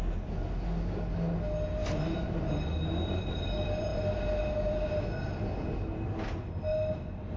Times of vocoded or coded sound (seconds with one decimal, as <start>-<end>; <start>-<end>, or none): none